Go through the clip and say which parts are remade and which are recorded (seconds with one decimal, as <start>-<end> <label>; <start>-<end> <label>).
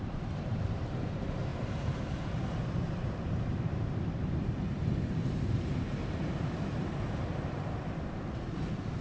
0.0-9.0 remade